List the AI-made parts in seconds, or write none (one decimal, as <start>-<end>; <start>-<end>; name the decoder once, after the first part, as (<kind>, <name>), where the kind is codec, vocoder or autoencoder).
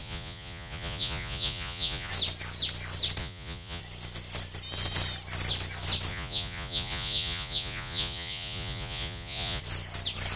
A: 0.0-2.1 (vocoder, Vocos); 3.2-3.8; 6.1-9.6